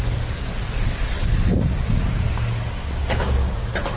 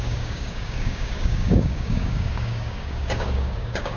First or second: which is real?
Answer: first